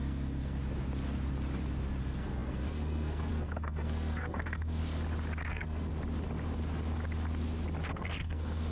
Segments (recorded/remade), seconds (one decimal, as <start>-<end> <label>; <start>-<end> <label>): 0.0-0.6 remade; 0.6-2.0 recorded; 2.0-4.8 remade; 4.8-5.5 recorded; 5.5-5.9 remade; 5.9-7.9 recorded; 7.9-8.7 remade